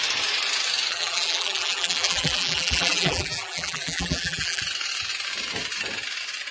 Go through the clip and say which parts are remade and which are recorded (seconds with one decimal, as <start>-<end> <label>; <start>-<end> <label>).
0.0-0.9 recorded; 0.9-4.6 remade; 4.6-6.5 recorded